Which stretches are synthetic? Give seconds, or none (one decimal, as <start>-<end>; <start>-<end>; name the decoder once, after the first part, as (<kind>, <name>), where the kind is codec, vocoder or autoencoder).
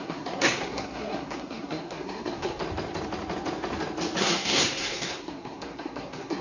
0.0-2.6 (codec, SNAC); 4.2-6.4